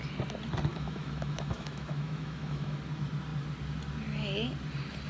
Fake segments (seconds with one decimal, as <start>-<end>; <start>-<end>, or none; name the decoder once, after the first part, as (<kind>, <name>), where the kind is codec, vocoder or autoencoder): 0.7-2.8 (autoencoder, DAC-VAE)